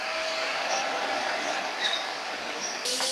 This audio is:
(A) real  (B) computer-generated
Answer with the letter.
B